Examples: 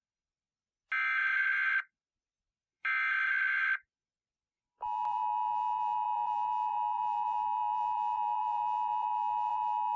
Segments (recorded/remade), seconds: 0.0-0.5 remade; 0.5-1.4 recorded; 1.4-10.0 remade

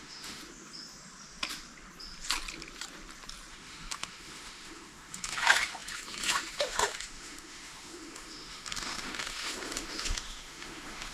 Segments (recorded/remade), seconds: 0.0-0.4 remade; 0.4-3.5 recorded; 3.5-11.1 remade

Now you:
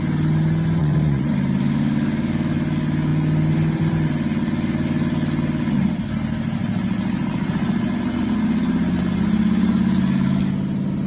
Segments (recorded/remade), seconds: 0.0-0.8 recorded; 0.8-1.3 remade; 1.3-11.1 recorded